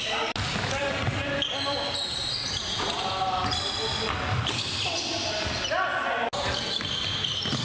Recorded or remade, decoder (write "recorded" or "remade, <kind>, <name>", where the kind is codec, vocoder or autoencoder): recorded